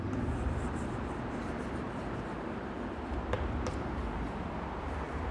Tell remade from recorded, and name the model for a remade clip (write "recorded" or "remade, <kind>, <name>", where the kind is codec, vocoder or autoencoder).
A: remade, vocoder, BigVGAN v2